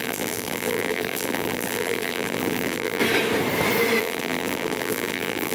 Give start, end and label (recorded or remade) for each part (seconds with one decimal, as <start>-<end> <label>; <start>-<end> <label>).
0.0-3.0 remade; 3.0-4.0 recorded; 4.0-5.5 remade